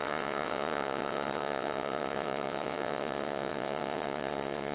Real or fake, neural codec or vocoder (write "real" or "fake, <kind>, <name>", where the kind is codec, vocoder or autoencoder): fake, vocoder, WaveNeXt